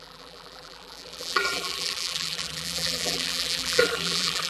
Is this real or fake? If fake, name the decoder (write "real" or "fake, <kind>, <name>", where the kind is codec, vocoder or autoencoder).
fake, vocoder, BigVGAN v2